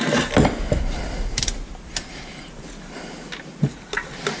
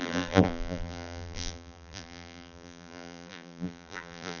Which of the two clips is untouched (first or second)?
first